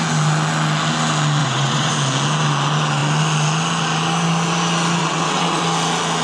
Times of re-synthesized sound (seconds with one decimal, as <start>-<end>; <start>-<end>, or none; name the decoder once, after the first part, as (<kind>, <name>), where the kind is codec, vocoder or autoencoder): 1.4-1.9 (vocoder, WaveNeXt); 5.0-5.6